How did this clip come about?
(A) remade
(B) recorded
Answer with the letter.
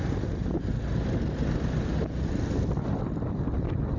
B